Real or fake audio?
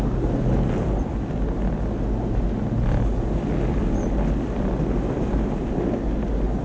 real